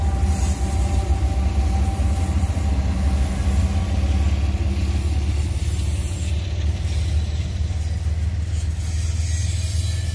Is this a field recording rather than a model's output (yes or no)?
yes